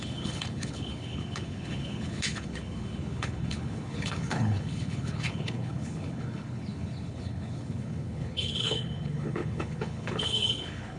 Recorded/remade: remade